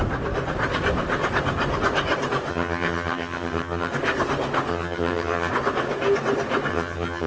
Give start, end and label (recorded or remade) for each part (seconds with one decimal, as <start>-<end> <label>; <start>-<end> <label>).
0.0-2.5 recorded; 2.5-3.9 remade; 3.9-4.7 recorded; 4.7-5.5 remade; 5.5-6.7 recorded; 6.7-7.3 remade